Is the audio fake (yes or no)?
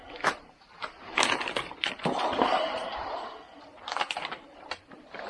yes